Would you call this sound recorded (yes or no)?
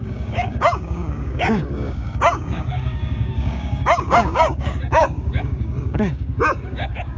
no